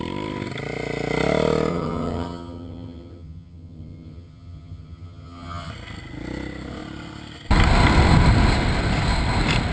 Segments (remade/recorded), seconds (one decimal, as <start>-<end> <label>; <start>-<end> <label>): 0.0-1.7 recorded; 1.7-5.7 remade; 5.7-9.7 recorded